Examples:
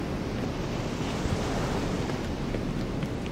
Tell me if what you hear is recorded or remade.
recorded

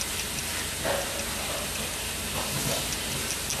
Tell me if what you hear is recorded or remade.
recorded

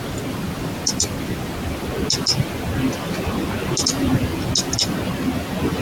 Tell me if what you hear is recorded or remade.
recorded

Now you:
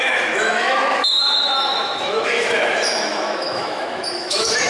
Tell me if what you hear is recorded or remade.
remade